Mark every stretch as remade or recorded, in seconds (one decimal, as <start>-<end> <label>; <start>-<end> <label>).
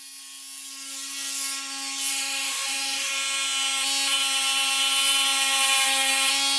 0.0-2.1 recorded; 2.1-3.1 remade; 3.1-6.6 recorded